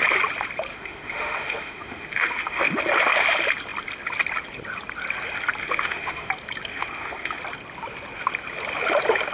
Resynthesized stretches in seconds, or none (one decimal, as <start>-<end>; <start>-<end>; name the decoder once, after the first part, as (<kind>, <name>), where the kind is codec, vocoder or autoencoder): 0.7-2.8 (autoencoder, DAC-VAE); 5.6-6.3; 6.7-7.4